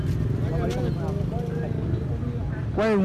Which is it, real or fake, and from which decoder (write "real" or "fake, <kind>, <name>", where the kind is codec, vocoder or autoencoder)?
real